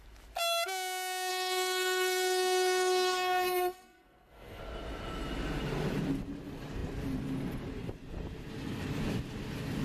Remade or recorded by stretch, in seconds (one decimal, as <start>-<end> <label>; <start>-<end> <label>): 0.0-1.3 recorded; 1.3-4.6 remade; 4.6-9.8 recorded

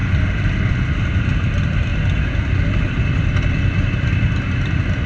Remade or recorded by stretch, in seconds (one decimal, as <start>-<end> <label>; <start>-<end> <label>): 0.0-5.1 recorded

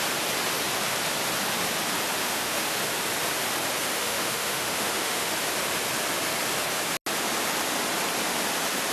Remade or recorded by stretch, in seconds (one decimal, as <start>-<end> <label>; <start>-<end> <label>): 0.0-2.2 recorded; 2.2-2.8 remade; 2.8-3.9 recorded; 3.9-5.3 remade; 5.3-8.9 recorded

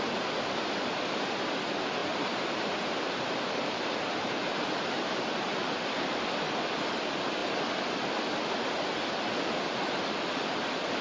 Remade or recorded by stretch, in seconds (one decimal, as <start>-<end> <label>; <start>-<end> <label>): 0.0-2.0 recorded; 2.0-5.5 remade; 5.5-11.0 recorded

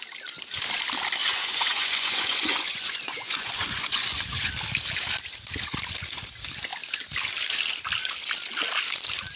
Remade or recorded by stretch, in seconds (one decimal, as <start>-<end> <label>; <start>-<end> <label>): 0.0-1.2 recorded; 1.2-4.5 remade; 4.5-9.4 recorded

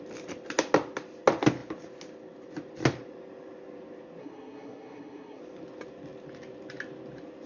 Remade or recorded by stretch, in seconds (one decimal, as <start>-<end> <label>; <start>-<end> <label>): 0.0-4.2 recorded; 4.2-5.4 remade; 5.4-7.5 recorded

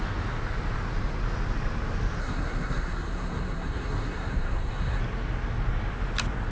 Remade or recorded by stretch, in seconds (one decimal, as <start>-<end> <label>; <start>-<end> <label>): 0.0-2.2 recorded; 2.2-5.0 remade; 5.0-6.5 recorded